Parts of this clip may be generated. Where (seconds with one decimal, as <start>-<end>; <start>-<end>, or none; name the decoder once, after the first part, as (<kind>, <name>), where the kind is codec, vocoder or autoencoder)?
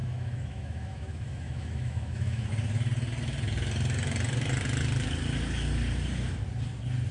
0.0-2.5 (autoencoder, DAC-VAE)